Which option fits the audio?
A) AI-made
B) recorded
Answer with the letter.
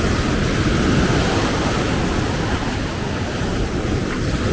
B